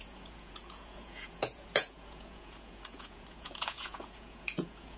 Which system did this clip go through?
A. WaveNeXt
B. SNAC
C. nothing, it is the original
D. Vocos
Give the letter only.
D